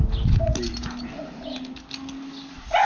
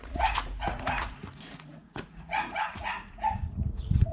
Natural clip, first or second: first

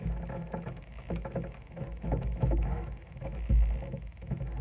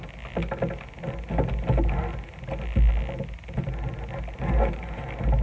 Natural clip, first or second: second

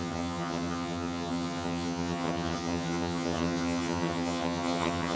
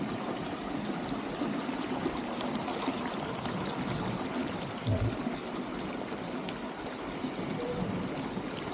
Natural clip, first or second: second